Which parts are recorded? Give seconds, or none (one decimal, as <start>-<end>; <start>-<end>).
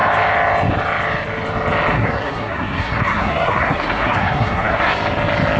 0.0-1.9; 4.9-5.6